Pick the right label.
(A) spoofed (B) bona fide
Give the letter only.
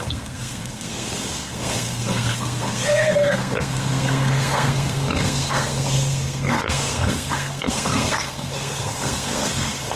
A